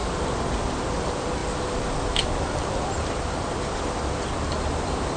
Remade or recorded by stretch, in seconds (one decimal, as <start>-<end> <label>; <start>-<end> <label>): 0.0-0.8 recorded; 0.8-1.4 remade; 1.4-4.5 recorded; 4.5-5.2 remade